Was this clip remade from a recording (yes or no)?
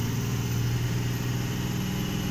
no